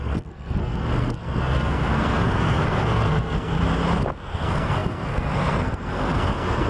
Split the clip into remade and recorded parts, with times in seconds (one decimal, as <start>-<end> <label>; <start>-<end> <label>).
0.0-3.6 remade; 3.6-4.1 recorded; 4.1-6.7 remade